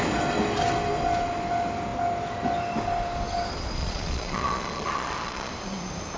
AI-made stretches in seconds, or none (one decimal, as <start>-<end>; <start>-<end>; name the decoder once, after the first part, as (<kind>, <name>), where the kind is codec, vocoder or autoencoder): 3.8-5.5 (vocoder, Vocos)